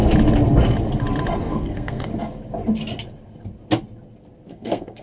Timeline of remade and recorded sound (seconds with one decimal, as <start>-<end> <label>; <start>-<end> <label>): 0.0-1.4 recorded; 1.4-2.1 remade; 2.1-4.5 recorded; 4.5-5.0 remade